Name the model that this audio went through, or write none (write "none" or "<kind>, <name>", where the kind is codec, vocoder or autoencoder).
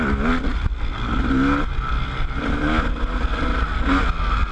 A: none